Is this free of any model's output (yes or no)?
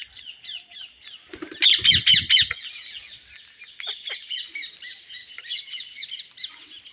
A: yes